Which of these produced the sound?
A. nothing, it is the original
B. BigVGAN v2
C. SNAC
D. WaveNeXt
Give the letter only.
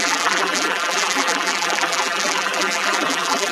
B